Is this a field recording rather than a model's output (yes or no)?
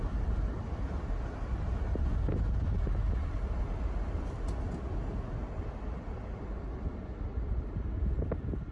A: yes